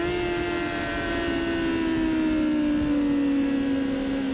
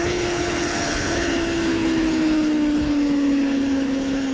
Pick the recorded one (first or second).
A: first